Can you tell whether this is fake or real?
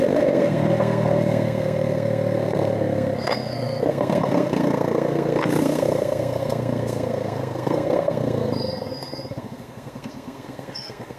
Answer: fake